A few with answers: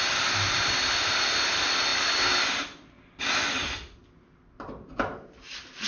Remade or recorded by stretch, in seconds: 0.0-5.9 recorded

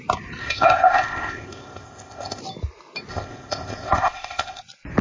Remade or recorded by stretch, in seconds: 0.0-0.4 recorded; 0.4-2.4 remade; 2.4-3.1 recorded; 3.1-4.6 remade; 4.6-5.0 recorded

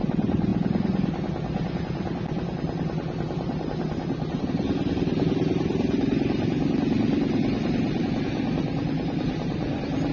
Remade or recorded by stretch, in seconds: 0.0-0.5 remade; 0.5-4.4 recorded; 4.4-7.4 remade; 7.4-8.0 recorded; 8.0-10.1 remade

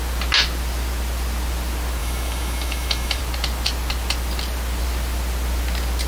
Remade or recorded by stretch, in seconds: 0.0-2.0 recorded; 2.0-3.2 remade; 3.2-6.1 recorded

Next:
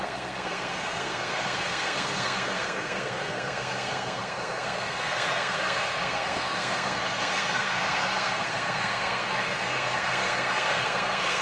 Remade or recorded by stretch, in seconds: 0.0-11.4 remade

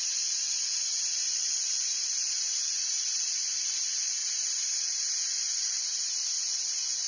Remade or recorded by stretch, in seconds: 0.0-7.1 recorded

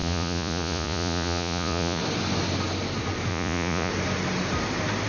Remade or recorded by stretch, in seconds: 0.0-2.0 remade; 2.0-3.3 recorded; 3.3-3.9 remade; 3.9-5.1 recorded